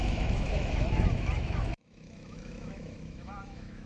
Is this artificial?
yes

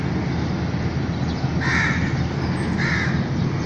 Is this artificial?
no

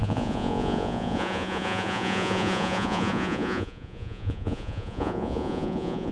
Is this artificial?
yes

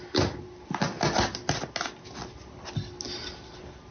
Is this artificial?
no